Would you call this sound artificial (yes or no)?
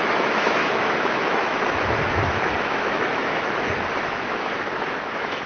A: yes